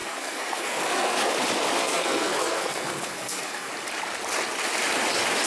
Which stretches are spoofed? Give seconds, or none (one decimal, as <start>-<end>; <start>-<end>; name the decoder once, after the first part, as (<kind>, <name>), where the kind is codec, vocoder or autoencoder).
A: 0.0-1.3 (codec, SNAC); 1.8-3.7